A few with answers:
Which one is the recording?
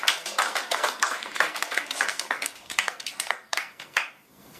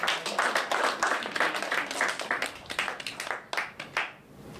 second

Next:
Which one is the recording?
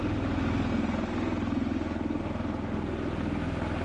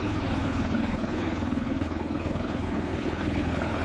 first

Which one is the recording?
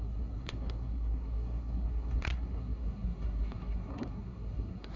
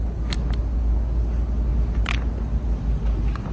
second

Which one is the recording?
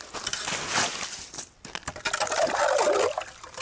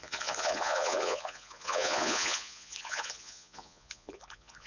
first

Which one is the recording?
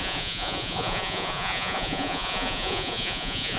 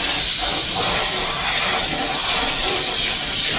second